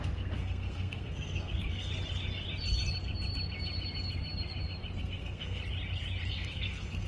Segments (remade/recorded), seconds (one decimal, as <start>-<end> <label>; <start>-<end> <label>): 0.0-1.9 remade; 1.9-5.0 recorded; 5.0-5.6 remade; 5.6-6.3 recorded; 6.3-7.1 remade